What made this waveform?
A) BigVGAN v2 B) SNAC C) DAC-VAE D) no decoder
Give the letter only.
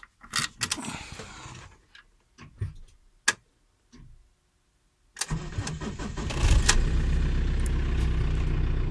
D